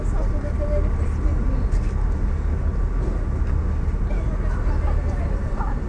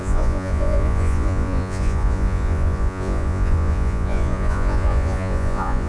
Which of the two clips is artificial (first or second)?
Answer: second